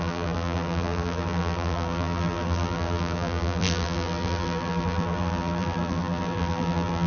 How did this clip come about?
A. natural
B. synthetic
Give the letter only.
B